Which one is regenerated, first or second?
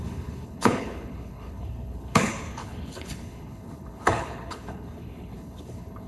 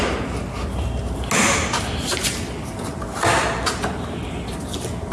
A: first